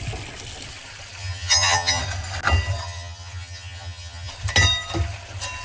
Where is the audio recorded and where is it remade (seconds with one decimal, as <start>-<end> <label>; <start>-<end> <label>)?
0.0-1.2 recorded; 1.2-2.0 remade; 2.0-2.8 recorded; 2.8-4.3 remade; 4.3-5.6 recorded